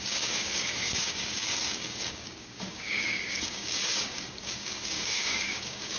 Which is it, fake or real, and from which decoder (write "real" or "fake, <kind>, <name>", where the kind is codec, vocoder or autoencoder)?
fake, codec, DAC